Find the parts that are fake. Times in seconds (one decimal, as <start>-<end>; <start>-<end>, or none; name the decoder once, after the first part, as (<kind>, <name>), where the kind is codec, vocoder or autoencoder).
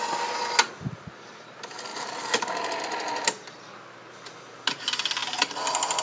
none